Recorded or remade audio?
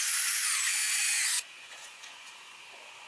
remade